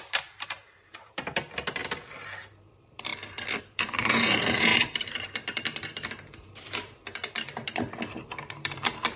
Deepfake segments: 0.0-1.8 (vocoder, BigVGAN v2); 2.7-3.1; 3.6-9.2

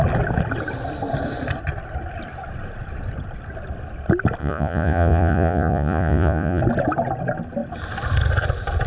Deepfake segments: 4.4-6.6 (vocoder, Vocos)